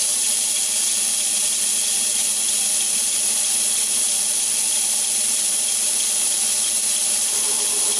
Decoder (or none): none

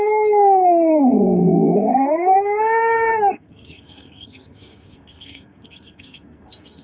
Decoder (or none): codec, SNAC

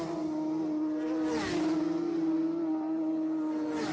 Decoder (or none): none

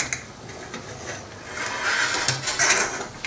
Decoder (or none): none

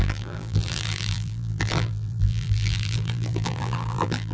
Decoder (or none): vocoder, BigVGAN v2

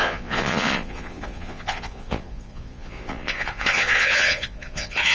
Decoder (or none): vocoder, Vocos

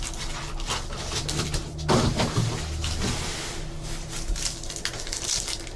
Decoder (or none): none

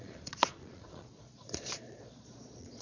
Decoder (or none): vocoder, Vocos